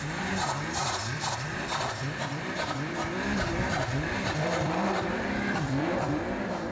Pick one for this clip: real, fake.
fake